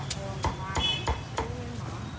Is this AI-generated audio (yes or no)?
no